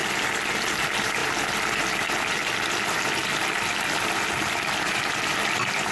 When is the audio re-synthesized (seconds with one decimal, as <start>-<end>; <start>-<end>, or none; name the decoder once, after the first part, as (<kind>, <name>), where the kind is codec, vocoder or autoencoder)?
0.7-1.2 (vocoder, BigVGAN v2); 4.0-5.9